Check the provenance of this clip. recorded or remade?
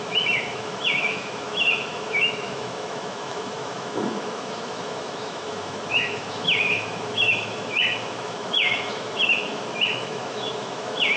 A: remade